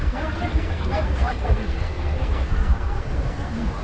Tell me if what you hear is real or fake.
fake